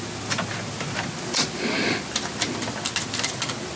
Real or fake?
real